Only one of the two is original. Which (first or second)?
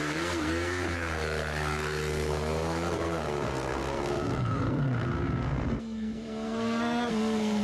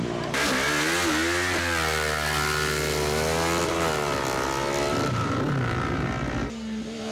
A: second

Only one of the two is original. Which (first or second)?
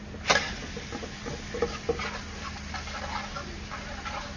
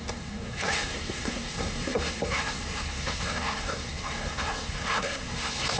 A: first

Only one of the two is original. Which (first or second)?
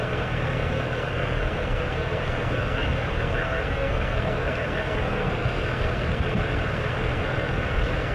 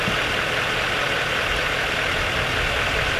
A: second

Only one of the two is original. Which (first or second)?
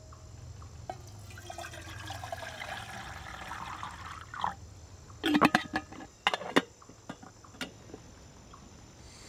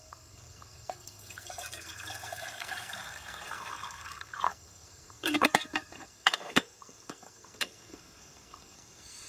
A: first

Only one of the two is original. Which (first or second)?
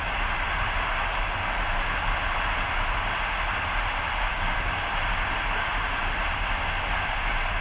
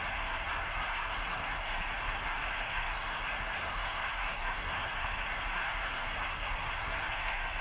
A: first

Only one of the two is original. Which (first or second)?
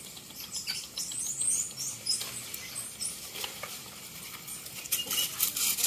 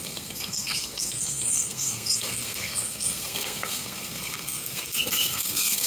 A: first